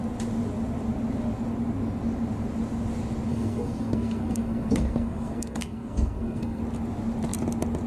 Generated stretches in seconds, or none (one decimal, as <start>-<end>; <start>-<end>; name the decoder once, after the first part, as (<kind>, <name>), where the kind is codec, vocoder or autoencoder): 3.3-6.6 (codec, SNAC)